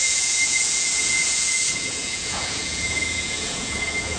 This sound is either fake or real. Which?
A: fake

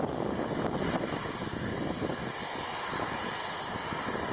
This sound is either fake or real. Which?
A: real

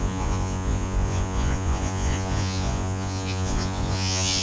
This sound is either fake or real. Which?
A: fake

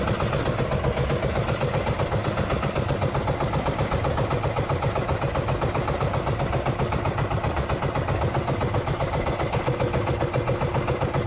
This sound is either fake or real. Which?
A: real